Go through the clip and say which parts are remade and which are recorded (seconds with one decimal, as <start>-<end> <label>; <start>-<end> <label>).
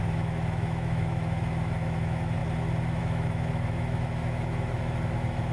0.0-2.4 remade; 2.4-3.0 recorded; 3.0-5.5 remade